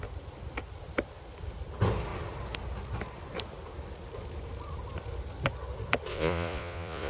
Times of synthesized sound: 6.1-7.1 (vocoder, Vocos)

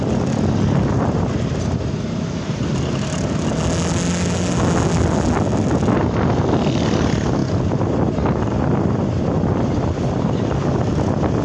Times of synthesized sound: none